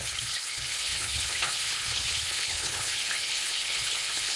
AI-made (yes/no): yes